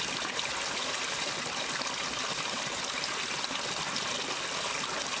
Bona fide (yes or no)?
yes